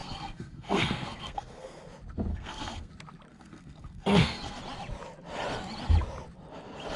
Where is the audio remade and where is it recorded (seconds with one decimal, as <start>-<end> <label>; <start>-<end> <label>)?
0.0-1.8 remade; 1.8-2.3 recorded; 2.3-2.9 remade; 2.9-3.3 recorded; 3.3-4.6 remade; 4.6-7.0 recorded